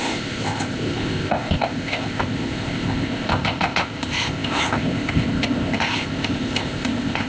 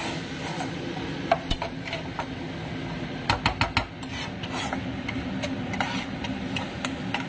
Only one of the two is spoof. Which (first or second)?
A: first